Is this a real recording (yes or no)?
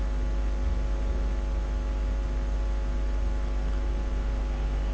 yes